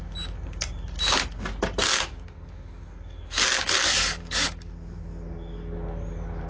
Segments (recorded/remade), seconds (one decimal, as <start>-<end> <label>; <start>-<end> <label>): 0.0-1.9 recorded; 1.9-4.7 remade; 4.7-6.5 recorded